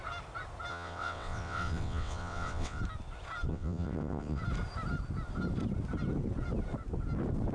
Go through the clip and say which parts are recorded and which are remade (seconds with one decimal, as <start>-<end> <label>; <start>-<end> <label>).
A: 0.0-0.7 recorded; 0.7-2.8 remade; 2.8-3.5 recorded; 3.5-4.4 remade; 4.4-7.5 recorded